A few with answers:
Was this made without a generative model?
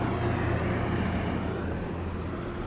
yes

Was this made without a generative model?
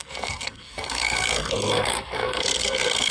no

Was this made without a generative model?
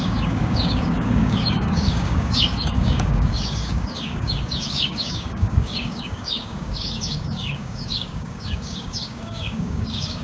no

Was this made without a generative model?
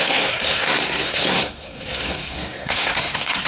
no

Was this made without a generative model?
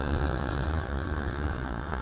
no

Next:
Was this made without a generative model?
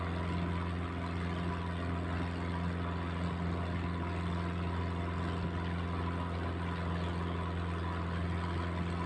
yes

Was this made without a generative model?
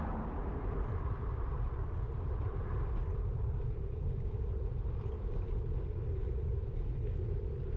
yes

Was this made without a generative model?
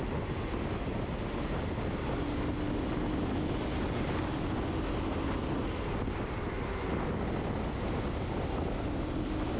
yes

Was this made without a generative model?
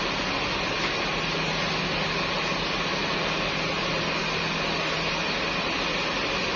yes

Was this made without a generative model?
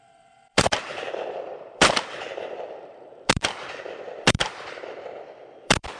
no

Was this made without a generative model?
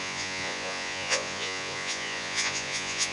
no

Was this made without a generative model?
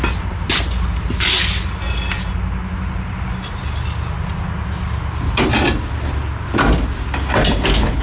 yes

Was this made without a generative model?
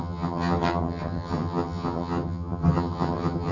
no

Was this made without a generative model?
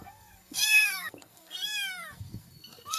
no